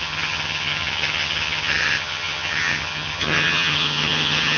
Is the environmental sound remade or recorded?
remade